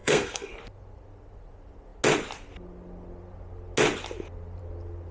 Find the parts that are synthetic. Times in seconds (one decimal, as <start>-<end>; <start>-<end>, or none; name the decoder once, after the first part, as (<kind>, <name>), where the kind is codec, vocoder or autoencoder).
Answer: 0.0-0.5 (codec, SNAC)